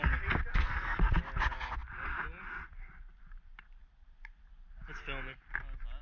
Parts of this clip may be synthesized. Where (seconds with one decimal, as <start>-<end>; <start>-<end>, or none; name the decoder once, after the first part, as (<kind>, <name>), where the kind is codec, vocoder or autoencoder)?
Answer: 0.5-1.1 (codec, SNAC)